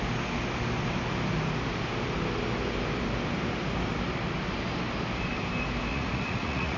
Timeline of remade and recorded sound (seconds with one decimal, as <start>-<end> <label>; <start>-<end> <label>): 0.0-5.9 recorded; 5.9-6.8 remade